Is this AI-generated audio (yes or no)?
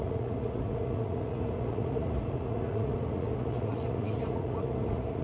yes